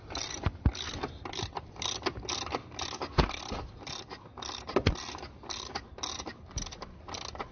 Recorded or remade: recorded